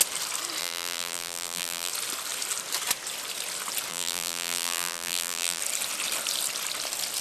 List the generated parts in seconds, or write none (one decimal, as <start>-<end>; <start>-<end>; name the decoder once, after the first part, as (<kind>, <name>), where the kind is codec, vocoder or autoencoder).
0.6-1.9 (vocoder, BigVGAN v2); 3.9-5.6